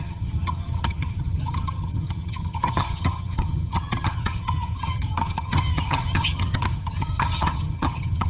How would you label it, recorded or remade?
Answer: remade